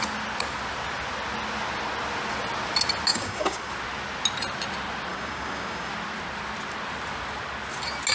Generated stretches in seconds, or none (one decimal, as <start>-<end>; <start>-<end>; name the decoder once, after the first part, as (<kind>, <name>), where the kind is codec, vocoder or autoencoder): 3.1-3.7 (codec, DAC); 5.1-5.9